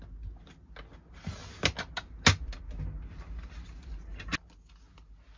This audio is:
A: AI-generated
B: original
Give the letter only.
B